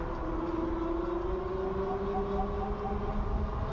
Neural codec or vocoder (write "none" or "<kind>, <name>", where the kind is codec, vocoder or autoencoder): none